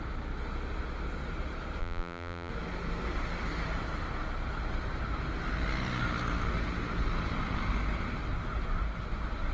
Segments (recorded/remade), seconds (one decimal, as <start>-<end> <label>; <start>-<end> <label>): 0.0-1.8 recorded; 1.8-2.5 remade; 2.5-9.5 recorded